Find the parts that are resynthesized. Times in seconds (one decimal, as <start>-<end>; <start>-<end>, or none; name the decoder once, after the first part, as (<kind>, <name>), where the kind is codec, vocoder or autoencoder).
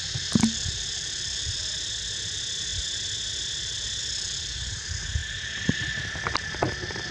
none